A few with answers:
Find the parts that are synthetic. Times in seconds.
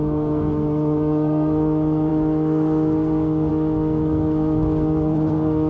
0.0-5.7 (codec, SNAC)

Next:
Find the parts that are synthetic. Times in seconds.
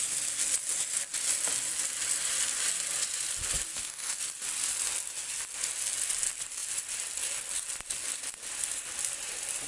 3.7-4.2 (codec, SNAC)